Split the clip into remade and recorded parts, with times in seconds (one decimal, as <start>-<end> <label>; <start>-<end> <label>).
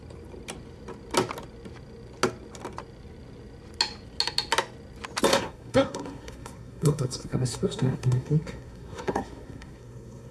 0.0-5.3 recorded; 5.3-10.3 remade